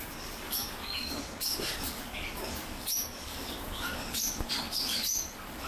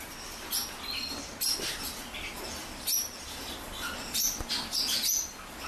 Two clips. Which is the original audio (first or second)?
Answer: second